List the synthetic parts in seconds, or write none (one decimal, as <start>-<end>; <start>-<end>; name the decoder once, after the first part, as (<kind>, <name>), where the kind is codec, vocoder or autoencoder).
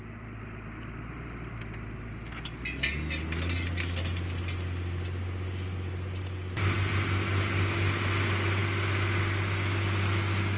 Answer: none